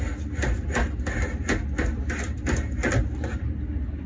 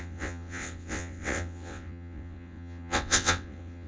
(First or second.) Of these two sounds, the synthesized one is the second